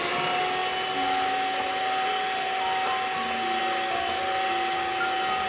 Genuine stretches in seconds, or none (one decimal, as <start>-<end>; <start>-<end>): 0.0-5.5

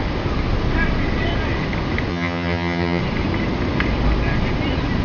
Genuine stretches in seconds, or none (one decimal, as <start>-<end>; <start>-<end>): 0.0-2.1; 3.0-5.0

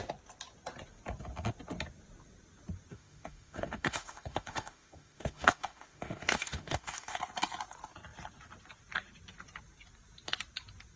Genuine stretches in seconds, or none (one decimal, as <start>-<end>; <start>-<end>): 0.0-2.9; 7.2-11.0

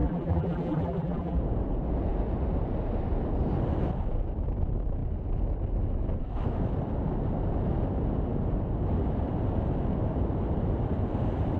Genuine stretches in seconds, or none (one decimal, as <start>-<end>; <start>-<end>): 1.4-11.6

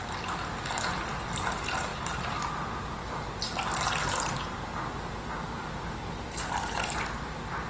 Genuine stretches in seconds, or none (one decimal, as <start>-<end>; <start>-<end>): 0.0-7.7